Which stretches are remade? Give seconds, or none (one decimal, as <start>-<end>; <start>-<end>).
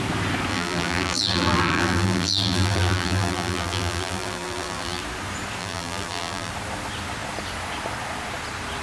0.5-5.0; 5.6-6.5